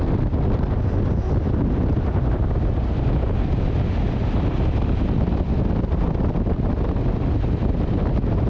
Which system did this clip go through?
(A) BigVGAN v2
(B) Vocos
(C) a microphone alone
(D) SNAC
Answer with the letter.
C